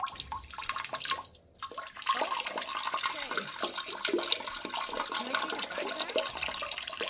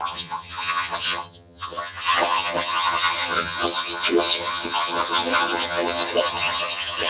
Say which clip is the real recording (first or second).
first